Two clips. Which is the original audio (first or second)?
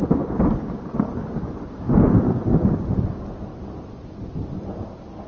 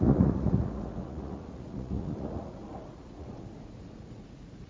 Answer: first